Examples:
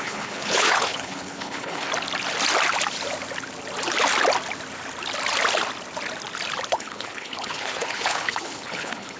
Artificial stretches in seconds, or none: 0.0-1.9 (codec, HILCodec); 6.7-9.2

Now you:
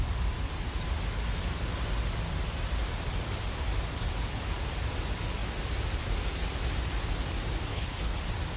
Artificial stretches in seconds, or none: 7.7-8.2 (codec, HILCodec)

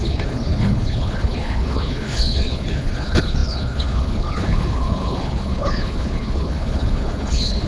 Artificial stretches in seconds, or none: 0.0-7.7 (codec, HILCodec)

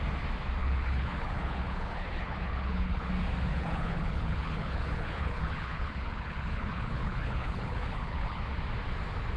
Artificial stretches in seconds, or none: 0.6-3.1 (codec, HILCodec); 3.5-8.4

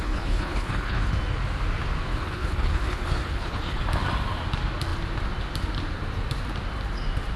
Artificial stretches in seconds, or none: 0.0-1.1 (codec, HILCodec); 2.1-3.8

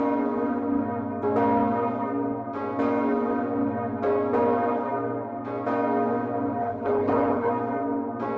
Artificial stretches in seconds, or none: 6.6-7.5 (codec, HILCodec)